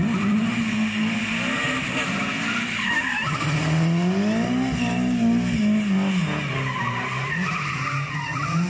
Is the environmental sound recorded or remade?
recorded